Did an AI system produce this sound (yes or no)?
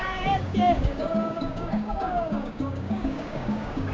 yes